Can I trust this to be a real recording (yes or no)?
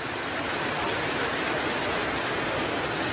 yes